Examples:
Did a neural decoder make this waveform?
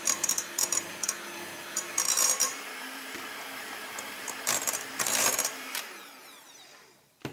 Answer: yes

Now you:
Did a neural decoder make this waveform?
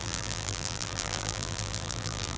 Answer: yes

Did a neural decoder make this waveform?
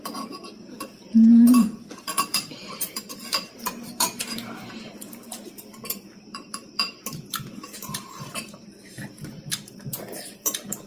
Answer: yes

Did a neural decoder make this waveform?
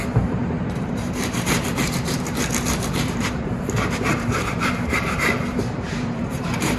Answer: yes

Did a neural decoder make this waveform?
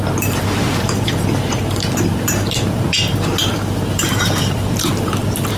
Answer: yes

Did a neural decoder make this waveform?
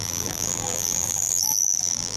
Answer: yes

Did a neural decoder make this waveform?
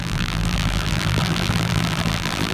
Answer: yes